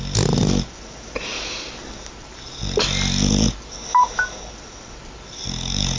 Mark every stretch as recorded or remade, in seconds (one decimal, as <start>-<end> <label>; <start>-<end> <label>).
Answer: 0.0-6.0 recorded